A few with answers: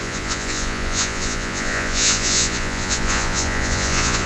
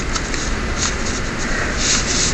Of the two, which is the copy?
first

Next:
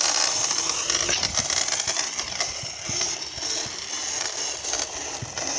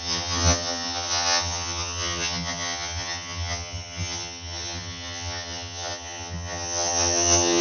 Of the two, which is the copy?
second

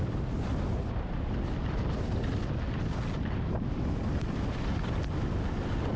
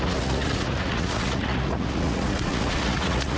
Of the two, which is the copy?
second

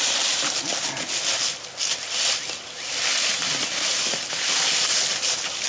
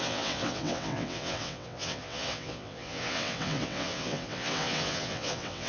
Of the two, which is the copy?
second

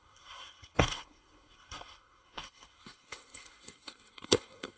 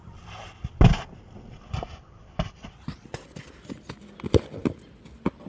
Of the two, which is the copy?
first